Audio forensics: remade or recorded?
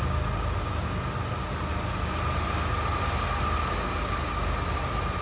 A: recorded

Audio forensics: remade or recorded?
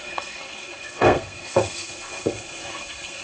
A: remade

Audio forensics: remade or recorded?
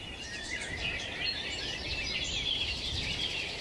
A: remade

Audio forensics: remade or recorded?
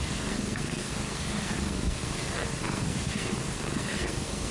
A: remade